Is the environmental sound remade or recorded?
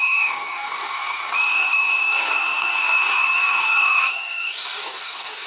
remade